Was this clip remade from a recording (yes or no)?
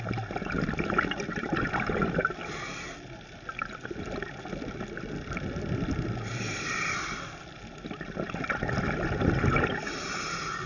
no